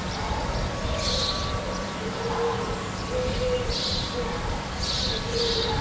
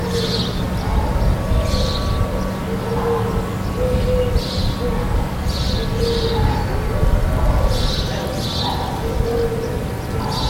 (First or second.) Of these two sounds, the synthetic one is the first